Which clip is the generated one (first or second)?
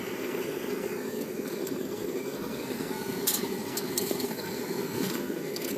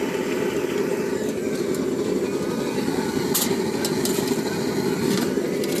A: first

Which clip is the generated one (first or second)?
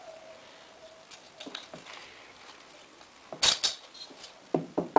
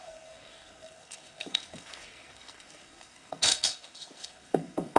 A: second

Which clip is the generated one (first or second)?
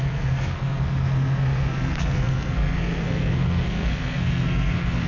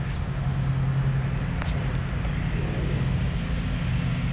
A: first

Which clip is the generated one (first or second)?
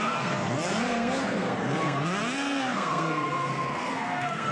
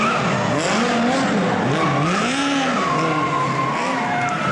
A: first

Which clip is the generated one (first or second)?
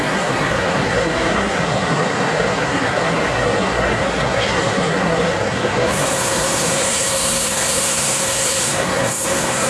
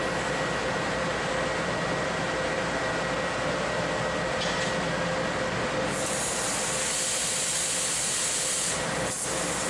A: first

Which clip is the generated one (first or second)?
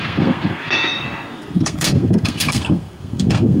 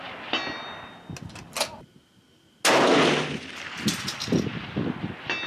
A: first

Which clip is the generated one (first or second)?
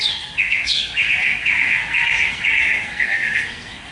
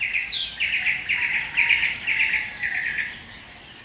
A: first